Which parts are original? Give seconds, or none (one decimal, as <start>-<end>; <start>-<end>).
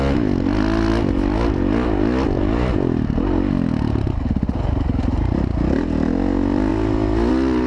0.0-7.7